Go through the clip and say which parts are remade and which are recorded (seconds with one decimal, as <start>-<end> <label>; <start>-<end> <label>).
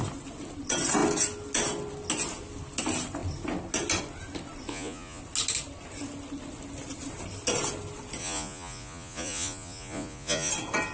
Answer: 0.0-4.7 recorded; 4.7-5.2 remade; 5.2-8.2 recorded; 8.2-10.5 remade; 10.5-10.9 recorded